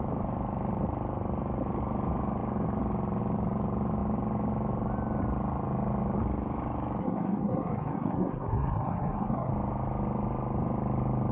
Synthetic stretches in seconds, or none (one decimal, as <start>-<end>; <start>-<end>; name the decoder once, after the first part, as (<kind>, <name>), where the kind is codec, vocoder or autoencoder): 7.0-9.5 (codec, SNAC)